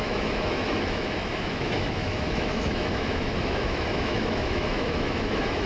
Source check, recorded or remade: remade